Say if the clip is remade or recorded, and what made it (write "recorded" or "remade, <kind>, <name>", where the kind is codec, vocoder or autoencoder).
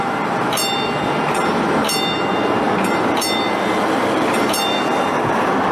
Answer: remade, vocoder, BigVGAN v2